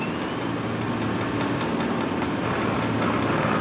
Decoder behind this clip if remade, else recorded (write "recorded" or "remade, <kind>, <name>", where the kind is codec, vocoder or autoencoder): recorded